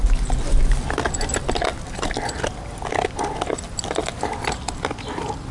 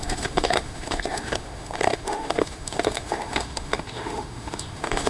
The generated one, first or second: second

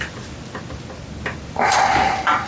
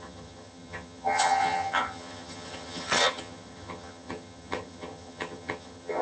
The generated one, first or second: second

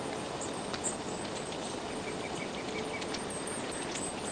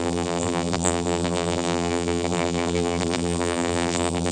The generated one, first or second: second